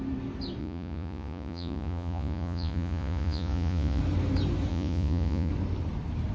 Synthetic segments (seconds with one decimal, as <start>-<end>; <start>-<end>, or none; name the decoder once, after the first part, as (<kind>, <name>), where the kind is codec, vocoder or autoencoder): 0.6-4.0 (vocoder, Vocos); 4.7-5.5